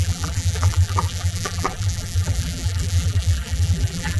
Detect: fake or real fake